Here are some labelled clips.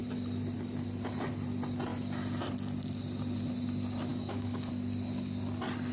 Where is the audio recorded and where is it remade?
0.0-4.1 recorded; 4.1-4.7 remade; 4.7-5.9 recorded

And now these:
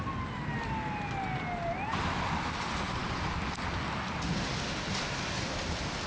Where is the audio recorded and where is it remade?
0.0-6.1 recorded